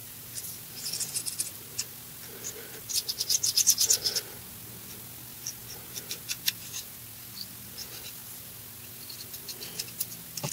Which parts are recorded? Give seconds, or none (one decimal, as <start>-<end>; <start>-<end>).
1.2-5.3; 6.0-10.5

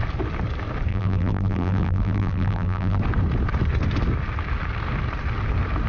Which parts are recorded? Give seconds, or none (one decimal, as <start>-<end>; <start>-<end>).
0.0-0.9; 3.0-5.9

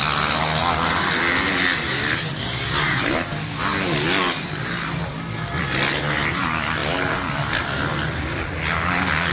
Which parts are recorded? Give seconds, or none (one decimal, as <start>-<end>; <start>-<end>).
0.0-9.3

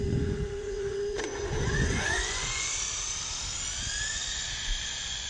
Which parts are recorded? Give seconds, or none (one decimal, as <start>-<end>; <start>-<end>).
2.7-4.1

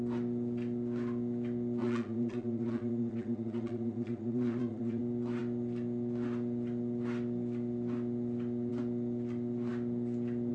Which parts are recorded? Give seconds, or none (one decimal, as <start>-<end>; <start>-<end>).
0.0-1.8; 5.0-10.5